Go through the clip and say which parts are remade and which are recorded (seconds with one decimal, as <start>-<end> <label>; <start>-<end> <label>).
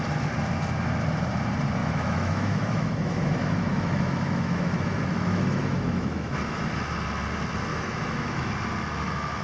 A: 0.0-1.8 recorded; 1.8-6.7 remade; 6.7-7.7 recorded; 7.7-8.5 remade; 8.5-9.4 recorded